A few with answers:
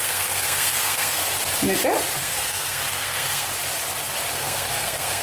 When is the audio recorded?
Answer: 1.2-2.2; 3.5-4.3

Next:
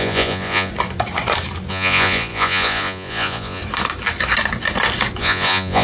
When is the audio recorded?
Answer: 0.7-1.7; 3.6-5.2